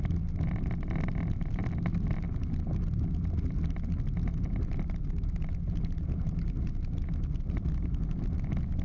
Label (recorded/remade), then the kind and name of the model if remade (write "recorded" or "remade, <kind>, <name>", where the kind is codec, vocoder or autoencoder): recorded